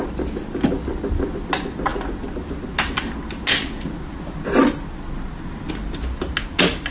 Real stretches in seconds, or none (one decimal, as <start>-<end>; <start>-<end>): 0.0-6.9